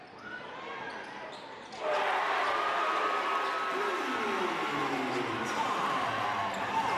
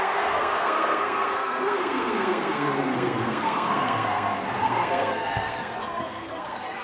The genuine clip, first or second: first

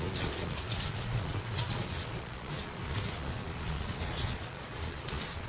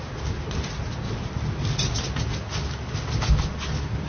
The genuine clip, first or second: second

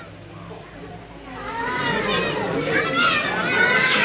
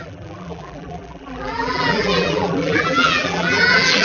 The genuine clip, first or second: first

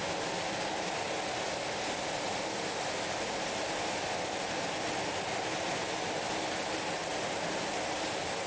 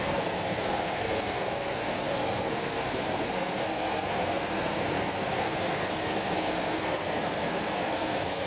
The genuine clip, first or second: first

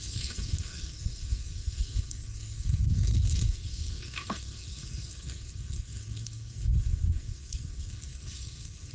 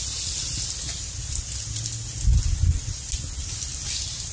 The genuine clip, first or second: second